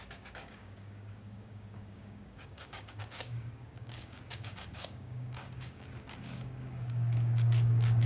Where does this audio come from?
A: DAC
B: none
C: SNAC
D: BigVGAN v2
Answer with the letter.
A